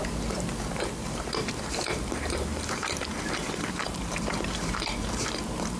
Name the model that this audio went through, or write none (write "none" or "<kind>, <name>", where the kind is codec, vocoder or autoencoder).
vocoder, BigVGAN v2